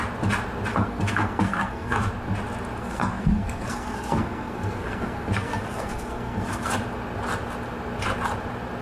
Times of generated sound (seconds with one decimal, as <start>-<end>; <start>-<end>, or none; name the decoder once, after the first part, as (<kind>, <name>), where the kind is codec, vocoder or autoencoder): 0.7-2.1 (codec, SNAC); 2.8-6.7